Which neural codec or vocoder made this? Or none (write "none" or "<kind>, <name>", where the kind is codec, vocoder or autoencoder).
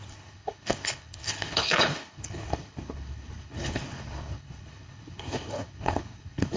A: codec, HILCodec